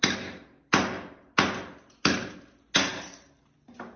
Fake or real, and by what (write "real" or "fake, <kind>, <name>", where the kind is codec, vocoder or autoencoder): real